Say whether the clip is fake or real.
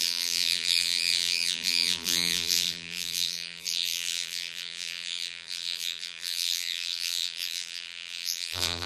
fake